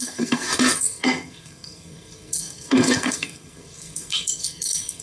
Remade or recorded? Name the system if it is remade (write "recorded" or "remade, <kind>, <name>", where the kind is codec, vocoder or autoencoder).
remade, codec, SNAC